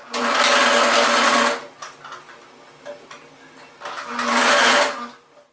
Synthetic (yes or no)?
no